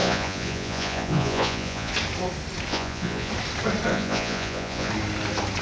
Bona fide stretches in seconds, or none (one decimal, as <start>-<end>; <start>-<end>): 1.9-2.7; 3.3-3.9; 4.9-5.6